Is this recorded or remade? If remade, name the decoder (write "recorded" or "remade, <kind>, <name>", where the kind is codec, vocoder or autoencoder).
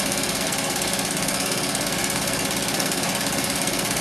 remade, codec, SNAC